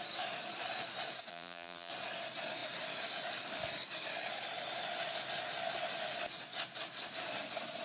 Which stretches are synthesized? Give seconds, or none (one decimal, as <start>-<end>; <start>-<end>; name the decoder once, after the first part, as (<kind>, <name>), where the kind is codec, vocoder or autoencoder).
1.3-1.9 (vocoder, BigVGAN v2)